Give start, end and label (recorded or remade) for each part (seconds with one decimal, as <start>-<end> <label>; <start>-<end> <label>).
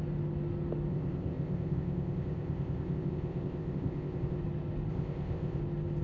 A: 0.0-0.9 recorded; 0.9-4.4 remade; 4.4-4.9 recorded; 4.9-5.6 remade; 5.6-6.0 recorded